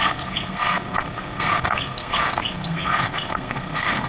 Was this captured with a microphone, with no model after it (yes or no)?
no